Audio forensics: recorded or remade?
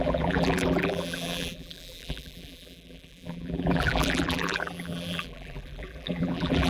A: remade